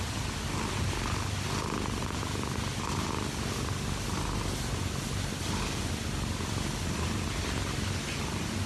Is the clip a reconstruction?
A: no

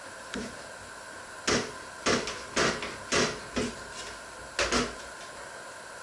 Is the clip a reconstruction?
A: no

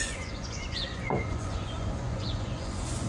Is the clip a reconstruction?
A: yes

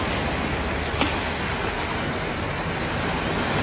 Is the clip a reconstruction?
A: no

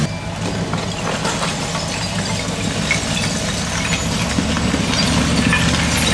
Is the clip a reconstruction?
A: no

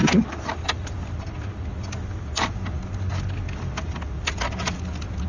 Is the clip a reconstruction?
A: no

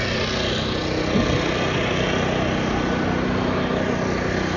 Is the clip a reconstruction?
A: no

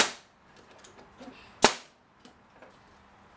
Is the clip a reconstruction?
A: no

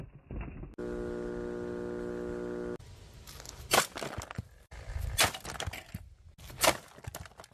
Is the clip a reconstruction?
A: no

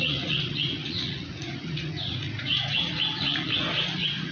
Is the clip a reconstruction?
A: yes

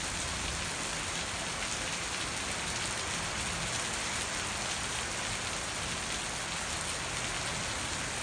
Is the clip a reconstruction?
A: no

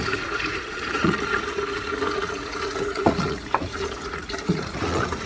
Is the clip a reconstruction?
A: yes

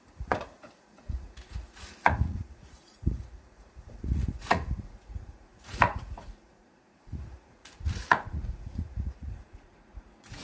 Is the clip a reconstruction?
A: yes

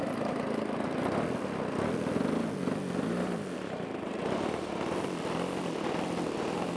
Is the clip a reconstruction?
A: no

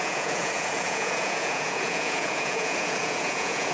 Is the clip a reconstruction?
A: yes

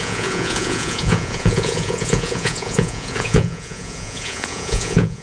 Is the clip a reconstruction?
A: yes